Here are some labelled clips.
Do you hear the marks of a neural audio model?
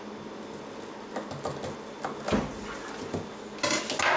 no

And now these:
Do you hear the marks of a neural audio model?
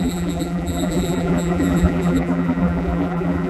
yes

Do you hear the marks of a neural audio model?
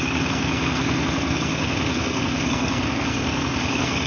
yes